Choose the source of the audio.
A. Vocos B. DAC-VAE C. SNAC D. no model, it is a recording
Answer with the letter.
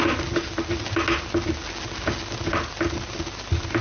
D